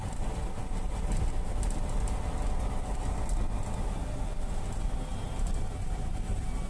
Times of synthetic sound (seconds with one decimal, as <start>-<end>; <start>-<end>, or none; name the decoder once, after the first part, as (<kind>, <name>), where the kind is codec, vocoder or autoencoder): none